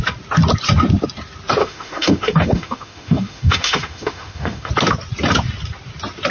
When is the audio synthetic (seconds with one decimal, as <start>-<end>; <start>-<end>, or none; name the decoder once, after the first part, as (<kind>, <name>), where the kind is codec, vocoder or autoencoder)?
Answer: 1.6-4.7 (autoencoder, DAC-VAE)